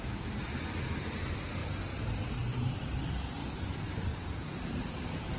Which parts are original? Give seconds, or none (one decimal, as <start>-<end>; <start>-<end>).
1.6-3.6; 4.1-4.6